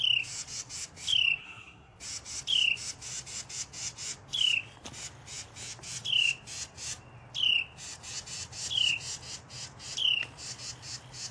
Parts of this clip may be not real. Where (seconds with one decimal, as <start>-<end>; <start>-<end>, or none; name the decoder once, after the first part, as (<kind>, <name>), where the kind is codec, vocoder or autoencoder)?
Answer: 1.4-2.0 (codec, SNAC)